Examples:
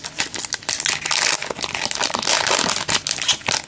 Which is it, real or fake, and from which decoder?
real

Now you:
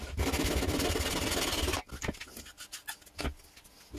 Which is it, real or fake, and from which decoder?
real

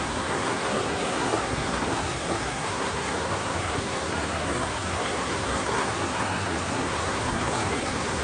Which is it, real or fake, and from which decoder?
fake, codec, SNAC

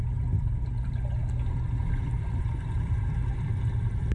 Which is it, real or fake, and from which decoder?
fake, vocoder, BigVGAN v2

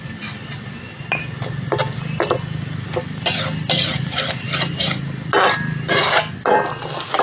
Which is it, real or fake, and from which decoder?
real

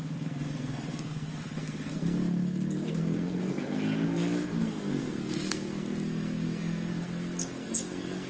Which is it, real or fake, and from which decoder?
fake, codec, SNAC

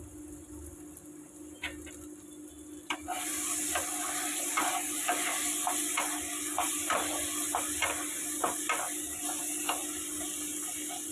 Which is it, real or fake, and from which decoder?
real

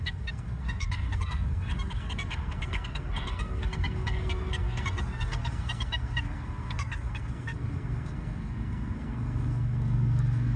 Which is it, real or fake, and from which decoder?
fake, codec, SNAC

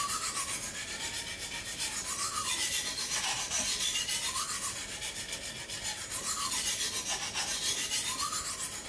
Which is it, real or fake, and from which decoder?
real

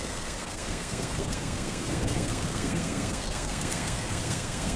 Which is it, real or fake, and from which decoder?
fake, codec, SNAC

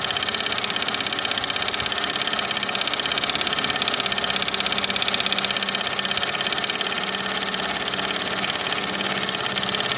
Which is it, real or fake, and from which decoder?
real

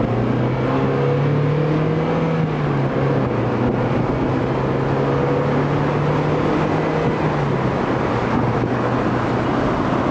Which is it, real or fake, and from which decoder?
real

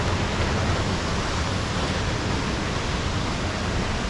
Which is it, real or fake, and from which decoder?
real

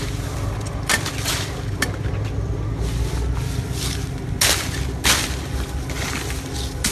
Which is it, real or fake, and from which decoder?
real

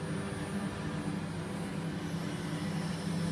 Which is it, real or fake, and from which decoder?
real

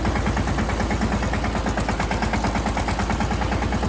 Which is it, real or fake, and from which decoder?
real